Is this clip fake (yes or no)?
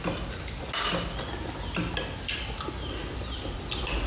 no